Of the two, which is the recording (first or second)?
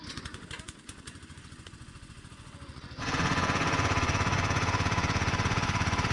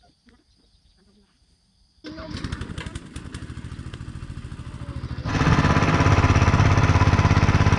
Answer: second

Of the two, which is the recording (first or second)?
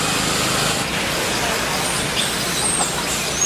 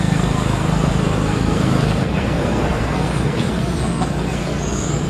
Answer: first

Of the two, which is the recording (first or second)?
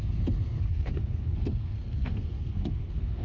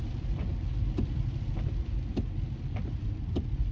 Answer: second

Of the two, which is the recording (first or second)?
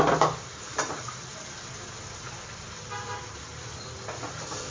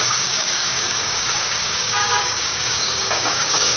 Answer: first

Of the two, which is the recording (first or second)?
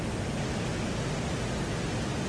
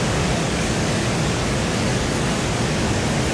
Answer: first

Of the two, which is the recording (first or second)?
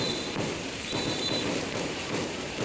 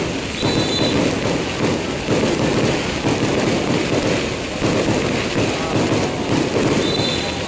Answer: second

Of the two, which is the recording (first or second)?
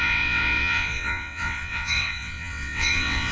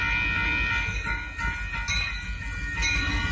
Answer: second